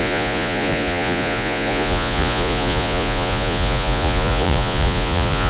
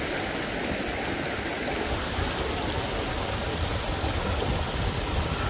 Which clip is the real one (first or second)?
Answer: second